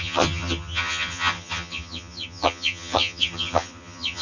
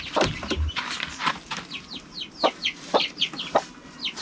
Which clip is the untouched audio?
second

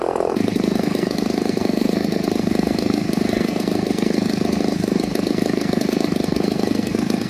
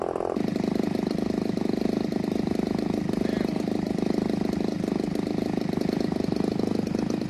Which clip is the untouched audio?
second